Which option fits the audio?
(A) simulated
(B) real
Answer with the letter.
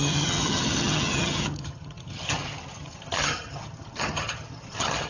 A